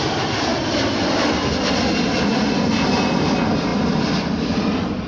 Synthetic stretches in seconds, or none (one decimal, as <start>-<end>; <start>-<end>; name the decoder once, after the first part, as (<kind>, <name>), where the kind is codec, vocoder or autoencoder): none